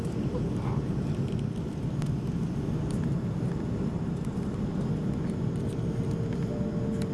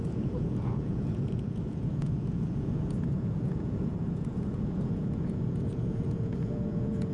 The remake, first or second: second